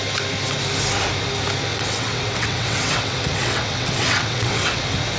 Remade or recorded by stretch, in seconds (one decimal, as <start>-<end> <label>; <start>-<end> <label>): 0.0-1.7 recorded; 1.7-4.8 remade; 4.8-5.2 recorded